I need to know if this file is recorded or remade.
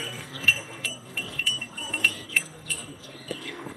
remade